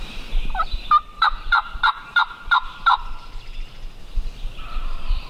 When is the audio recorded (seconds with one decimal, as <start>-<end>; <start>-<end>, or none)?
2.9-4.0